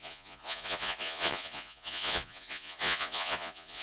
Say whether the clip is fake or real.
fake